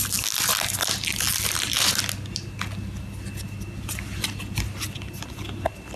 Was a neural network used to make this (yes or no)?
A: no